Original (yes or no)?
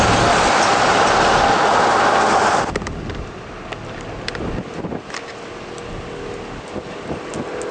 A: yes